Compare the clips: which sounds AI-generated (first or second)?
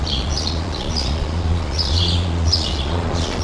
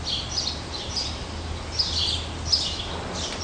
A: first